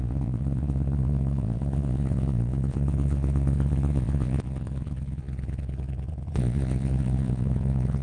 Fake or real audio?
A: fake